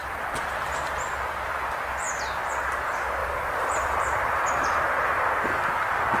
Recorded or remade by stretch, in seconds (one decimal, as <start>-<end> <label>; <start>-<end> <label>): 0.0-3.2 recorded; 3.2-4.5 remade; 4.5-6.2 recorded